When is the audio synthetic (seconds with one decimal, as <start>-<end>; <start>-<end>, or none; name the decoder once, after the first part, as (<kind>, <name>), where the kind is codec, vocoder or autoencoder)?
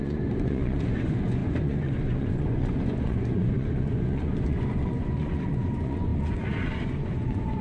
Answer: 0.0-7.6 (vocoder, Vocos)